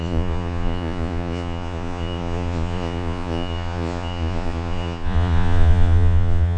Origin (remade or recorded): remade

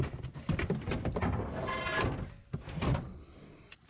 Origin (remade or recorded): recorded